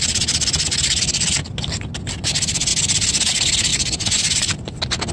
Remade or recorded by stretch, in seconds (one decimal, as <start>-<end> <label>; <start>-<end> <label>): 0.0-3.7 recorded; 3.7-4.5 remade; 4.5-5.1 recorded